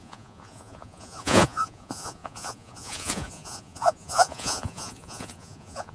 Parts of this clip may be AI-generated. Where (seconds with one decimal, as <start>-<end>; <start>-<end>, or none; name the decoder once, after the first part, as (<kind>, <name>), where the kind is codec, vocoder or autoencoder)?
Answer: 0.0-5.9 (vocoder, Vocos)